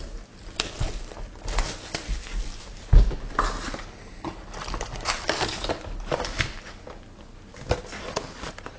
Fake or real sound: real